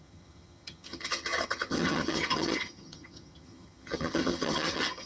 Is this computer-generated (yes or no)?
yes